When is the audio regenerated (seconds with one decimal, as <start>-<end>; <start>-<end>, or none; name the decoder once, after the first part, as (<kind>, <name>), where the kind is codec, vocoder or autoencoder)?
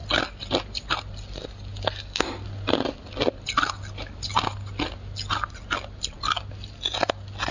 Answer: none